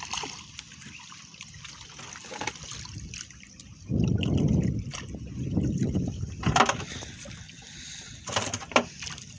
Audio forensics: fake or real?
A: fake